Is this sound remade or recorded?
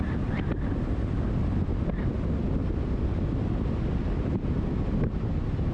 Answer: recorded